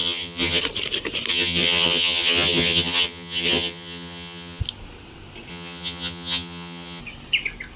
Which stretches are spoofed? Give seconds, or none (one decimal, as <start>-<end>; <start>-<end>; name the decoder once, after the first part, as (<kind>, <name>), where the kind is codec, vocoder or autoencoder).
0.0-0.6 (vocoder, HiFi-GAN); 1.3-4.6; 5.5-7.0